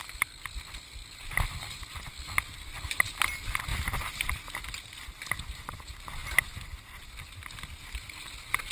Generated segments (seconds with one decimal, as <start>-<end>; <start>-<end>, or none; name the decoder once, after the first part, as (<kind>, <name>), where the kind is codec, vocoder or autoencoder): 3.7-4.3 (vocoder, BigVGAN v2)